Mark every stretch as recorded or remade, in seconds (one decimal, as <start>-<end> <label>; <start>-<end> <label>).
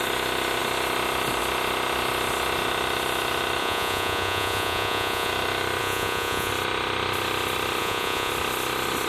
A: 0.0-3.6 recorded; 3.6-5.3 remade; 5.3-5.8 recorded; 5.8-6.5 remade; 6.5-7.8 recorded; 7.8-8.3 remade; 8.3-9.1 recorded